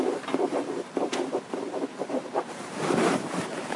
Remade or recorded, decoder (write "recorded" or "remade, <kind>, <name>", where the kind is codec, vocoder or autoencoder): remade, vocoder, BigVGAN v2